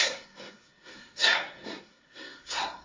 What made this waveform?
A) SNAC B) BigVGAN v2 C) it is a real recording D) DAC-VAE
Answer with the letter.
A